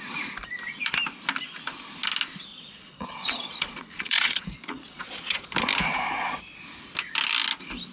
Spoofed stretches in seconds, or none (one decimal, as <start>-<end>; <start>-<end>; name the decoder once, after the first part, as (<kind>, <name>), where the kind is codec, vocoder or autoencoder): 2.5-5.5 (vocoder, Vocos); 5.9-6.4